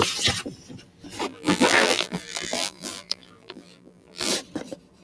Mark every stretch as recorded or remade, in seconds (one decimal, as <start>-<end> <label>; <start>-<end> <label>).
0.0-1.3 recorded; 1.3-4.3 remade; 4.3-5.0 recorded